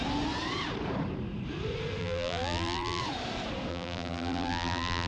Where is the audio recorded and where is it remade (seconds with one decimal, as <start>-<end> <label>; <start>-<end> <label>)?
0.0-2.0 recorded; 2.0-3.0 remade; 3.0-3.7 recorded; 3.7-5.1 remade